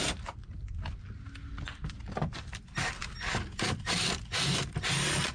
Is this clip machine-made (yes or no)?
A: no